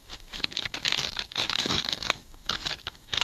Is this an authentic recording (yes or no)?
no